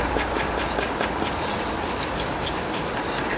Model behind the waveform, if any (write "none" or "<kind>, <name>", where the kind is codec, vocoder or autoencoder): vocoder, BigVGAN v2